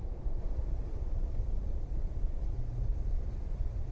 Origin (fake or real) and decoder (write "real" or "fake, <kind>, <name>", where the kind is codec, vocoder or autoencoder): fake, vocoder, Vocos